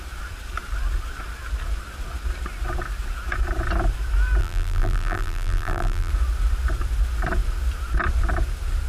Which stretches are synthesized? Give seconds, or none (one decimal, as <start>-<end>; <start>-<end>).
4.4-6.1